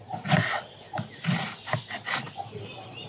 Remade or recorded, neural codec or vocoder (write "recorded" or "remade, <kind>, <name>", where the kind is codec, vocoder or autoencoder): recorded